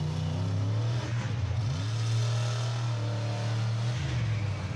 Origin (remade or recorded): recorded